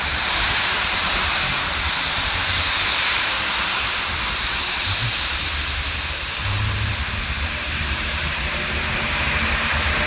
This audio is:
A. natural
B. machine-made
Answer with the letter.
B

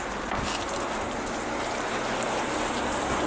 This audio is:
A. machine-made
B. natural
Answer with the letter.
B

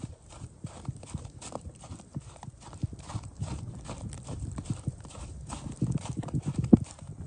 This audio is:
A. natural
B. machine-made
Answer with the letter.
B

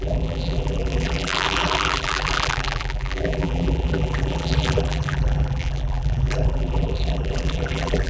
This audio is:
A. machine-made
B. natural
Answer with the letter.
A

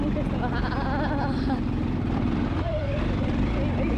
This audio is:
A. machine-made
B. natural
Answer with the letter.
B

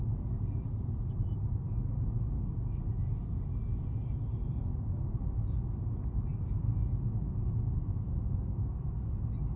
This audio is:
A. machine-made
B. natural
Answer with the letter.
B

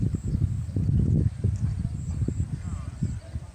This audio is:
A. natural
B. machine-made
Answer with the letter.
B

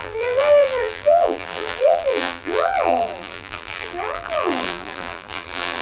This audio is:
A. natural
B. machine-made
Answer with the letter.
B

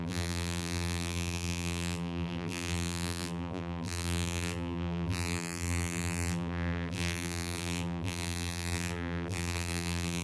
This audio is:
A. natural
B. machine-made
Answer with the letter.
B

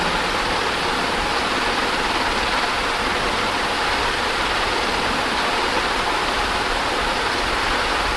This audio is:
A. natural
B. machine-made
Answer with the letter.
A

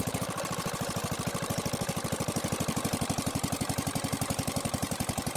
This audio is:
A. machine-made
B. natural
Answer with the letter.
B